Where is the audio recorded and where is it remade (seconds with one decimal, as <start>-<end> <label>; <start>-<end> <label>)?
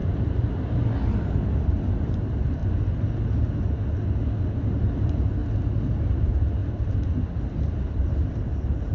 0.0-2.6 remade; 2.6-4.6 recorded; 4.6-5.4 remade; 5.4-6.1 recorded; 6.1-6.6 remade; 6.6-7.8 recorded; 7.8-8.9 remade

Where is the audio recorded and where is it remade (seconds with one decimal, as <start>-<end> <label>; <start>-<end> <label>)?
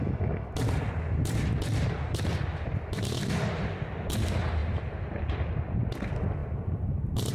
0.0-4.6 recorded; 4.6-5.2 remade; 5.2-7.3 recorded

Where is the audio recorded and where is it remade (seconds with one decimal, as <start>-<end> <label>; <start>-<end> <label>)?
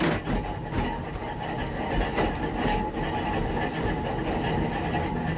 0.0-5.4 recorded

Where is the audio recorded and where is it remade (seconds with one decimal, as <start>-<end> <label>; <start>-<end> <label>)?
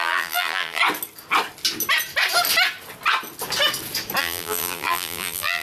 0.0-0.8 remade; 0.8-4.2 recorded; 4.2-5.6 remade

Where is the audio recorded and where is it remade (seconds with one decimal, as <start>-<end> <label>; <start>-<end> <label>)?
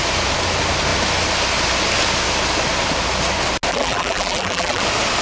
0.0-3.7 recorded; 3.7-4.8 remade; 4.8-5.2 recorded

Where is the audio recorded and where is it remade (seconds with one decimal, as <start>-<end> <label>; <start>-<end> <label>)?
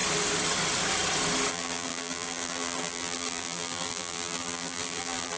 0.0-1.5 recorded; 1.5-5.4 remade